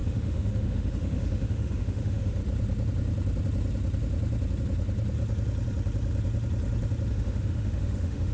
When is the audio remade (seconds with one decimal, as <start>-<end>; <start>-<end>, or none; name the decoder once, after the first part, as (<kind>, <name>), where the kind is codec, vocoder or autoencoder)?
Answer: 0.0-2.4 (autoencoder, DAC-VAE); 7.1-8.3